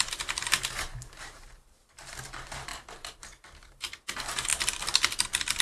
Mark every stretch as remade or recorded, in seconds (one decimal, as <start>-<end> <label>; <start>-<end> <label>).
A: 0.0-2.7 remade; 2.7-3.6 recorded; 3.6-4.5 remade; 4.5-5.6 recorded